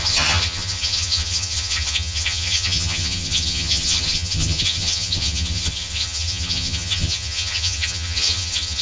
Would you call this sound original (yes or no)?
no